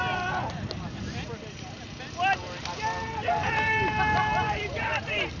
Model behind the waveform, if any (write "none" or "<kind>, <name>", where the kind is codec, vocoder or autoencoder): none